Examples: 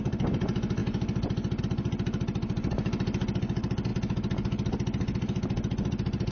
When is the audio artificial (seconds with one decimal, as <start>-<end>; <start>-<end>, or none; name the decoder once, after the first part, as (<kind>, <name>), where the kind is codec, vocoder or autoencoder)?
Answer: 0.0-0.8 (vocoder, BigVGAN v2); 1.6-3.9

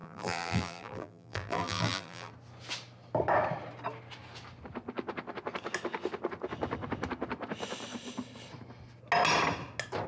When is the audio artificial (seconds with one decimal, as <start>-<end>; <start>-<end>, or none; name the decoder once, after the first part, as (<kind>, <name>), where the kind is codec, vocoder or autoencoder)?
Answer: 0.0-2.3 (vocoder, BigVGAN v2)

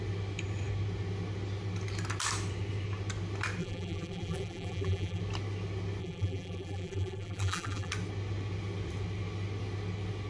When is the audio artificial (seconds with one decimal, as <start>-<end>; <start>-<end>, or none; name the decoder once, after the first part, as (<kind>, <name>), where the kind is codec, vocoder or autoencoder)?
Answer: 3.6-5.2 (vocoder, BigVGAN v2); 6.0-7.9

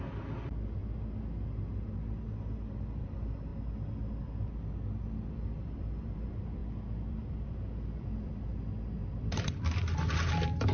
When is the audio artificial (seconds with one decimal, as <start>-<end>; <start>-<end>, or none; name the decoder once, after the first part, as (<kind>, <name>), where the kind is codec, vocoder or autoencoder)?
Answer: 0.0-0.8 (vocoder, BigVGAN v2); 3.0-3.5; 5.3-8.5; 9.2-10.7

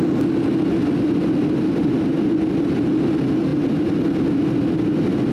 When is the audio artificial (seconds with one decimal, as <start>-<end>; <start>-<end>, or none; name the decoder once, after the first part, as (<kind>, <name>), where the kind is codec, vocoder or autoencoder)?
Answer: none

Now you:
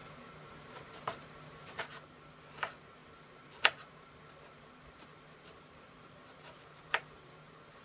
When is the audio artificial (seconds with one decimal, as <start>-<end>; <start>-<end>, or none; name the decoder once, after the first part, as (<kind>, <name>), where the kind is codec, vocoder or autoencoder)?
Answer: 0.0-1.8 (vocoder, BigVGAN v2); 3.0-7.8

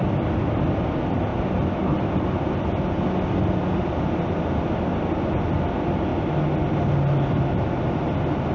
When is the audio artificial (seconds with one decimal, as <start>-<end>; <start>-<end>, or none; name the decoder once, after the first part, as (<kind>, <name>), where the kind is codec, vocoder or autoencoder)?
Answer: 1.3-5.0 (vocoder, BigVGAN v2)

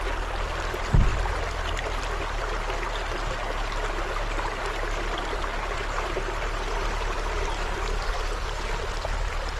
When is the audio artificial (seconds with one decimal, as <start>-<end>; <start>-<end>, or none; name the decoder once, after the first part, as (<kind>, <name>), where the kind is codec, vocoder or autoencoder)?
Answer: none